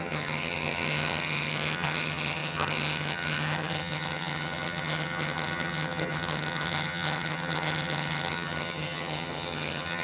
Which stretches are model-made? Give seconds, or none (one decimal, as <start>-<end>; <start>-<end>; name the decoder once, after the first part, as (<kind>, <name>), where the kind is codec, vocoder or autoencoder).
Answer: 0.0-10.0 (vocoder, HiFi-GAN)